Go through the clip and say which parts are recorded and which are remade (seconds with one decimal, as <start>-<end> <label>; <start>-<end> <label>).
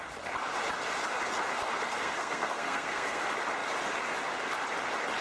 0.0-1.9 recorded; 1.9-3.2 remade; 3.2-5.2 recorded